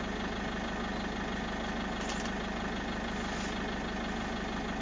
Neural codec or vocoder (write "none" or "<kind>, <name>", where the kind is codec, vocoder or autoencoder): none